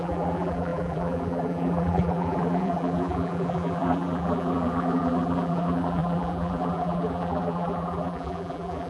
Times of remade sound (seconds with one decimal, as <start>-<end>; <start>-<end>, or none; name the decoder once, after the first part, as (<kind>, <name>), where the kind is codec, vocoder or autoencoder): 0.0-8.9 (vocoder, BigVGAN v2)